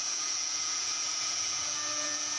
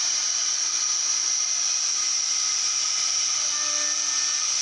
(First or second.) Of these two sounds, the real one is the second